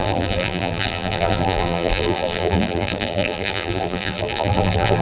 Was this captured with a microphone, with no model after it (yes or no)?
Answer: no